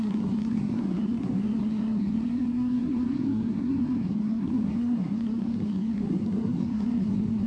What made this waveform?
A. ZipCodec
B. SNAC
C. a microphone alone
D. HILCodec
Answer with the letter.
B